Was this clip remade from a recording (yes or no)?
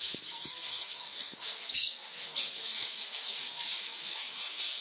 yes